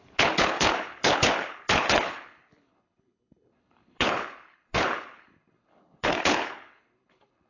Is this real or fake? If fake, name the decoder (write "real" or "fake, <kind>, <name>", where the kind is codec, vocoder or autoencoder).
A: fake, codec, HILCodec